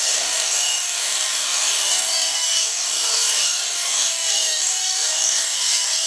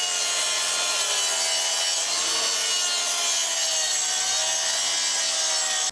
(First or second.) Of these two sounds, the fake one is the first